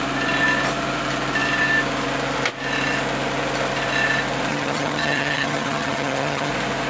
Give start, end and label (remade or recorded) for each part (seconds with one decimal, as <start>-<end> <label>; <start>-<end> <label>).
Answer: 0.0-4.5 recorded; 4.5-6.5 remade; 6.5-6.9 recorded